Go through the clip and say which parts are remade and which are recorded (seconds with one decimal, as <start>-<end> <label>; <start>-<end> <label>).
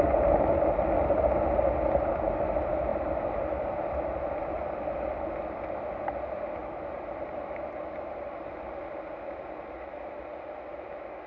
0.0-6.6 recorded; 6.6-8.8 remade; 8.8-11.3 recorded